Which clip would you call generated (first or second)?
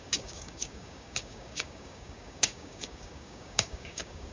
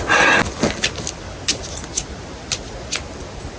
first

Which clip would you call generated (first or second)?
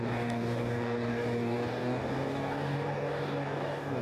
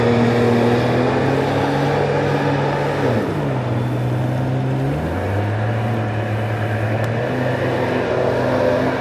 first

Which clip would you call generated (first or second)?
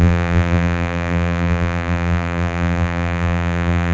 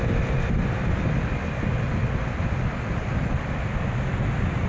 first